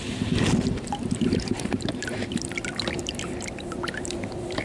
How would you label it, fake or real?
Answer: fake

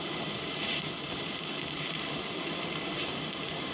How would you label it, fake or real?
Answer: fake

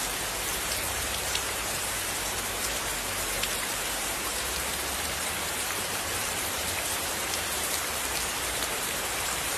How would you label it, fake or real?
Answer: fake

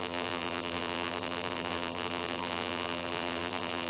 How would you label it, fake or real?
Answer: fake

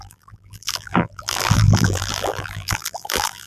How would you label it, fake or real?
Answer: fake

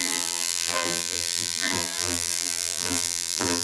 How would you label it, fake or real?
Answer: fake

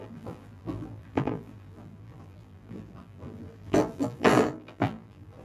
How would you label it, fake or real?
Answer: fake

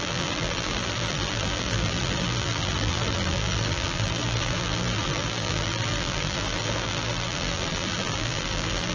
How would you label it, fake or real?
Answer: fake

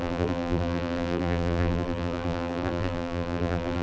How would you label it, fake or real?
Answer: fake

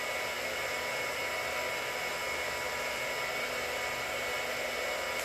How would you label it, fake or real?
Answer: real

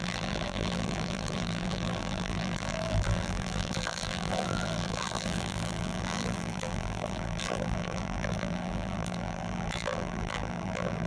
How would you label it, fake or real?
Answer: fake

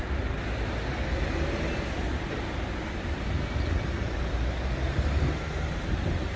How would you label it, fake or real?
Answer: real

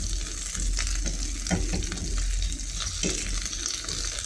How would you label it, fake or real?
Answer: real